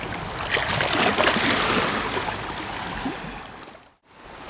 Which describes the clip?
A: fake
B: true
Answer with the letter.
B